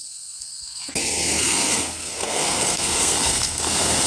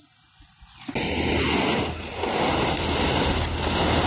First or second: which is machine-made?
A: first